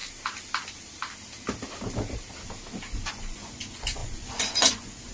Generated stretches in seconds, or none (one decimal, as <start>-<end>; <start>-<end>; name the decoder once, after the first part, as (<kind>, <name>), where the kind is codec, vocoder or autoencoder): 3.1-5.1 (vocoder, Vocos)